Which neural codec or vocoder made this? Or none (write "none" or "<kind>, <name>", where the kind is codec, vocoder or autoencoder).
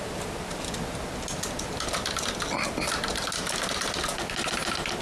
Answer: none